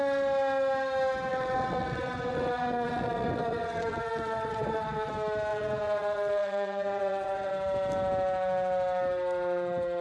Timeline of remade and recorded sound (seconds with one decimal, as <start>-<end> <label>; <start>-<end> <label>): 0.0-1.3 recorded; 1.3-5.1 remade; 5.1-5.5 recorded; 5.5-7.5 remade; 7.5-10.0 recorded